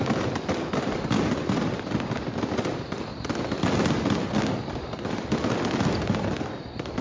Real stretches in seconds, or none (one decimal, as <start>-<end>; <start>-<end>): 0.0-7.0